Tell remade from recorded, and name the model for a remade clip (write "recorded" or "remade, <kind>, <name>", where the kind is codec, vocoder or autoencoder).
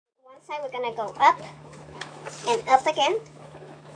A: remade, autoencoder, DAC-VAE